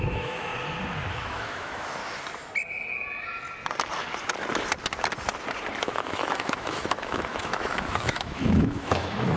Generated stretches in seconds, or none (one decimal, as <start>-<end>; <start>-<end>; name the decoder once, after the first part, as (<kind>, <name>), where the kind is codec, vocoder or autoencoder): 0.0-0.5 (autoencoder, DAC-VAE); 1.1-2.0; 5.8-9.4